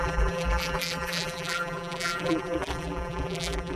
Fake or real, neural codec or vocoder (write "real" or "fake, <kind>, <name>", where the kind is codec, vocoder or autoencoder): fake, vocoder, BigVGAN v2